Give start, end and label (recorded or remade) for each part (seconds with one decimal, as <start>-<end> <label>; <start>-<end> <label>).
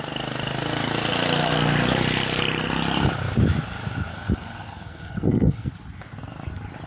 0.0-4.1 recorded; 4.1-5.7 remade; 5.7-6.9 recorded